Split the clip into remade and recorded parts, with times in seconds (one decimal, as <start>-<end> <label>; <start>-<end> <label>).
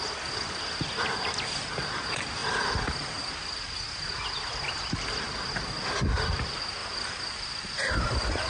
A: 0.0-2.4 recorded; 2.4-3.3 remade; 3.3-6.8 recorded; 6.8-8.5 remade